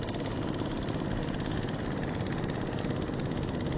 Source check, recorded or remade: recorded